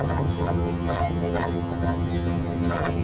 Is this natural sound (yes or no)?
no